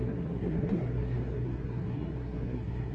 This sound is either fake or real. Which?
fake